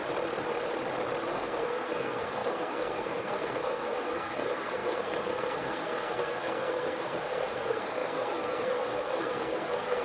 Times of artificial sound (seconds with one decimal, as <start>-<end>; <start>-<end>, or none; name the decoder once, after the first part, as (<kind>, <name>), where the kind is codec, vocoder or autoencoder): 1.3-10.0 (codec, SNAC)